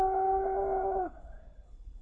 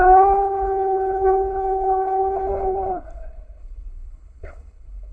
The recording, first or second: first